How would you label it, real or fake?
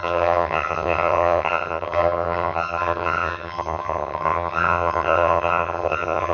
fake